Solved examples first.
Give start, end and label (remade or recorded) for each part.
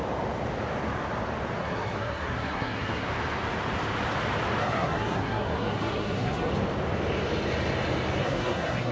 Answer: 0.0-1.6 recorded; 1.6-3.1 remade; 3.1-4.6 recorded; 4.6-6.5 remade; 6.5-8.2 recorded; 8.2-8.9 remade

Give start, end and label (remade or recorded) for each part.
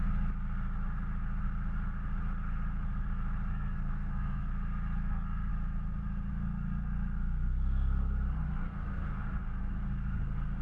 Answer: 0.0-3.5 recorded; 3.5-4.5 remade; 4.5-5.1 recorded; 5.1-5.5 remade; 5.5-6.3 recorded; 6.3-10.6 remade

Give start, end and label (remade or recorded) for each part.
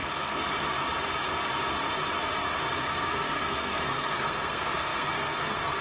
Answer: 0.0-2.8 recorded; 2.8-5.8 remade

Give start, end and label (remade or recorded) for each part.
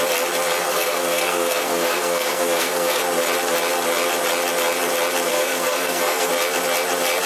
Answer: 0.0-0.6 recorded; 0.6-3.0 remade; 3.0-5.3 recorded; 5.3-6.3 remade; 6.3-7.3 recorded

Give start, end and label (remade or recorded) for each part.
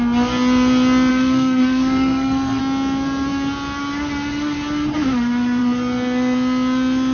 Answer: 0.0-1.1 recorded; 1.1-2.6 remade; 2.6-7.1 recorded